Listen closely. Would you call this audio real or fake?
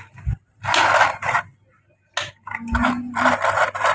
real